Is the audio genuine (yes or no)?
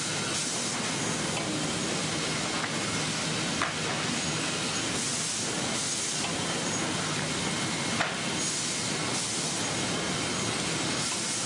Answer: yes